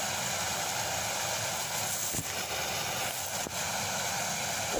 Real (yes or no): yes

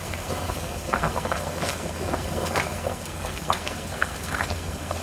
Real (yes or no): no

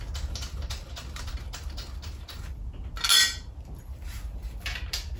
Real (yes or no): yes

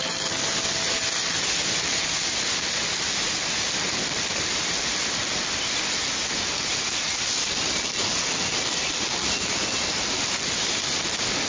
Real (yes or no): yes